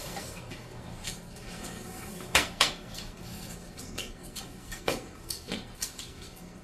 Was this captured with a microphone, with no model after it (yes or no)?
no